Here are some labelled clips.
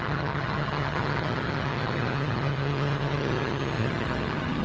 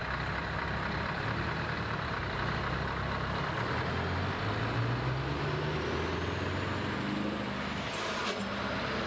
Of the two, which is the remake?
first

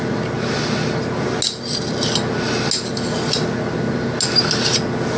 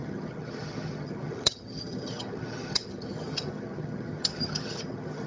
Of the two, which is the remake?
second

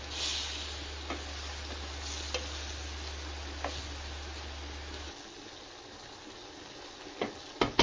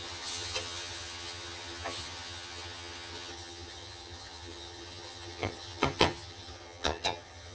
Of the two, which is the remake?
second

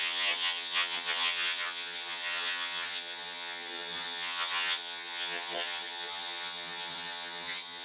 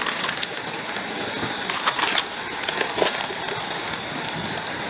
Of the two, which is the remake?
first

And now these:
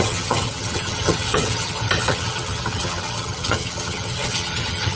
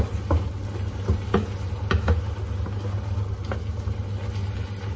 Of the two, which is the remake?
first